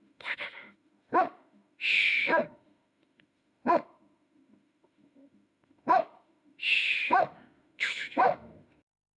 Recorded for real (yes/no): no